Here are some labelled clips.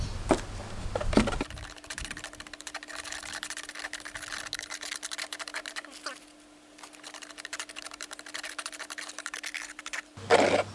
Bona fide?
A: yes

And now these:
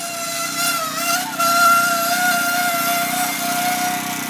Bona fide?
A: yes